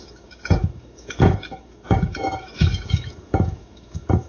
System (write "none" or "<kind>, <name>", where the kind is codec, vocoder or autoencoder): autoencoder, DAC-VAE